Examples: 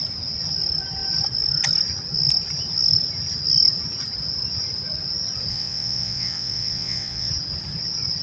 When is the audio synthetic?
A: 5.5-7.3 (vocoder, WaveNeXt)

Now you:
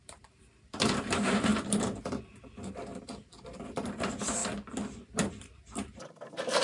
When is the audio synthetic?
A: 0.0-4.4 (vocoder, BigVGAN v2); 5.1-6.6